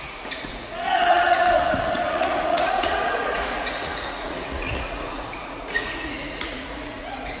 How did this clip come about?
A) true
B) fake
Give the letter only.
B